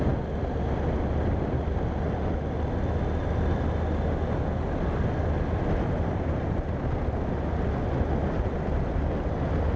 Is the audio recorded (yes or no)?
yes